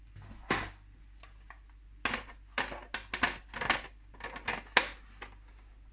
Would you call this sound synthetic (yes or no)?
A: no